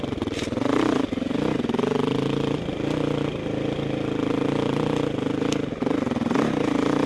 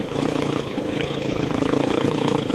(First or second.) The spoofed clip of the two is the second